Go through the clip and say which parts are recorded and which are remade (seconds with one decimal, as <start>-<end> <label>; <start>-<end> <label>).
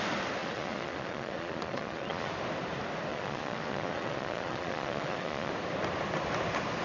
0.0-0.4 recorded; 0.4-2.3 remade; 2.3-3.1 recorded; 3.1-5.5 remade; 5.5-6.8 recorded